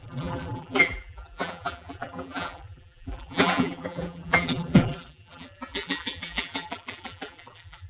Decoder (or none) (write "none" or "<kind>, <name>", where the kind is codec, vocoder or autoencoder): vocoder, BigVGAN v2